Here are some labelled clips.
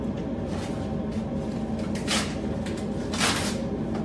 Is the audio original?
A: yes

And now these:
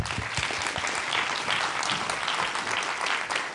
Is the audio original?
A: yes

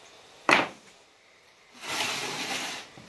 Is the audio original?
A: no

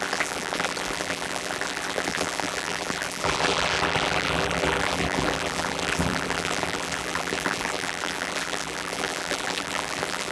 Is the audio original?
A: no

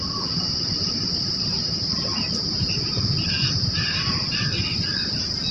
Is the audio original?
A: no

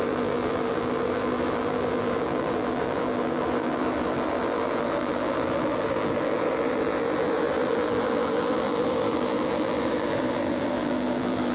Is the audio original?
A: no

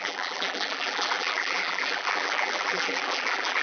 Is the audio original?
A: no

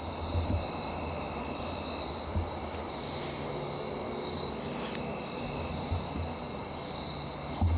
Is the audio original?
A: yes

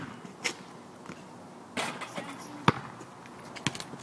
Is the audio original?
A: yes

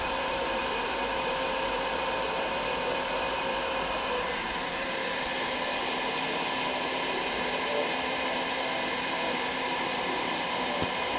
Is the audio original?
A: no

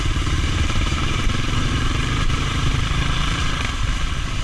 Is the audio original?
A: no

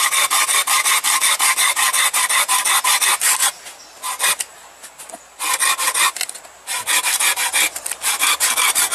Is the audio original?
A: yes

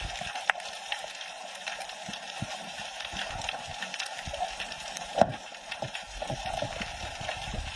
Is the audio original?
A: no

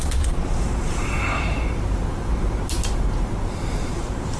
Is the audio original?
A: no